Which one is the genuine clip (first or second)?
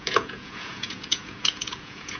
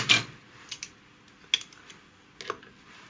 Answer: second